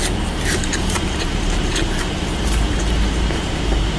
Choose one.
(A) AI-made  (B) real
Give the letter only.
A